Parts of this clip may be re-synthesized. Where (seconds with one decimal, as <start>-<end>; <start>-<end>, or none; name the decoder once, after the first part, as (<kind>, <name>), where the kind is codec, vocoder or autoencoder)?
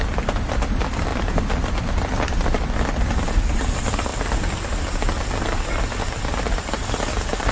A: none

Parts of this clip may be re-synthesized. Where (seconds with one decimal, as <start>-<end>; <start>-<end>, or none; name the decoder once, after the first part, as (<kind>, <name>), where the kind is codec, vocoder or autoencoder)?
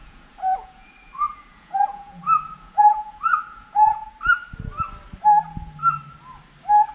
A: 0.0-4.1 (vocoder, Vocos)